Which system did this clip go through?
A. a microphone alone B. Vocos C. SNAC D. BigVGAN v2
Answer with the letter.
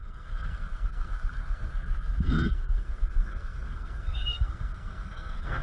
C